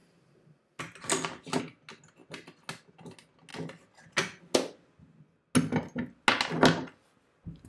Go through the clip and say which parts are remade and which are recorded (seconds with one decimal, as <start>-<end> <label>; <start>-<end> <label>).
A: 0.0-7.7 recorded